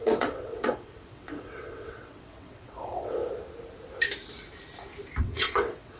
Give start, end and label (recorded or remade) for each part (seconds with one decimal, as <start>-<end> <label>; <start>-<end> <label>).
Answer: 0.0-3.2 remade; 3.2-5.2 recorded; 5.2-6.0 remade